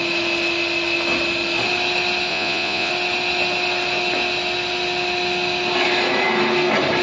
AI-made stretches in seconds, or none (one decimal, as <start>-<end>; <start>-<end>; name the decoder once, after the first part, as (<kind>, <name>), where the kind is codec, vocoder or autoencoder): 2.3-2.9 (vocoder, Vocos)